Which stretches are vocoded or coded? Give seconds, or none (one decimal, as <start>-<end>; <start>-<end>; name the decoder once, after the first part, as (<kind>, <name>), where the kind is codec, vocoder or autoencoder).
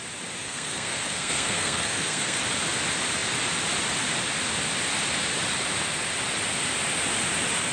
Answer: 0.4-2.4 (codec, SNAC)